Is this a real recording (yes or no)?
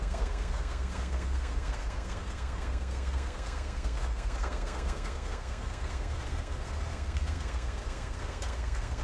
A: no